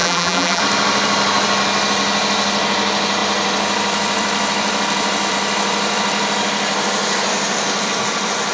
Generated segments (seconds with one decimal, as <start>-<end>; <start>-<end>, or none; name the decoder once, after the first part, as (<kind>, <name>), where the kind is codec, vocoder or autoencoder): 0.0-0.6 (vocoder, BigVGAN v2)